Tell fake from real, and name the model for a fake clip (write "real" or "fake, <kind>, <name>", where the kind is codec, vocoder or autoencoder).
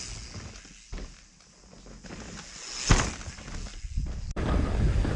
real